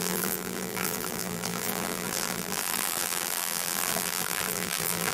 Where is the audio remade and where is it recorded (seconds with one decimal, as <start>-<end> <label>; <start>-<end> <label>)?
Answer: 0.0-5.1 remade